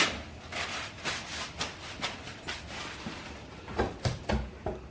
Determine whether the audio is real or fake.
real